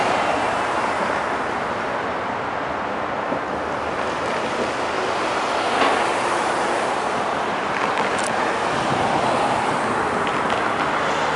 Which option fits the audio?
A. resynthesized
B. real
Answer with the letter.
B